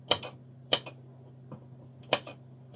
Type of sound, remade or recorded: recorded